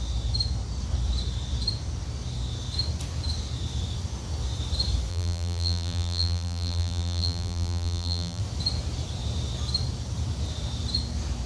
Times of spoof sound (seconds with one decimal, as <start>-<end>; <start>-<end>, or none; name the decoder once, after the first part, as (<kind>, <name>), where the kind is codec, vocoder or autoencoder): 5.1-8.4 (vocoder, BigVGAN v2)